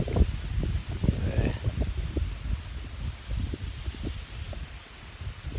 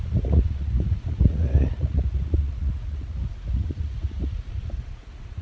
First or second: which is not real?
second